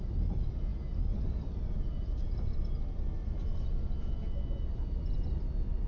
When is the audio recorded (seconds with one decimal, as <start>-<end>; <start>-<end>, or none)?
0.0-5.9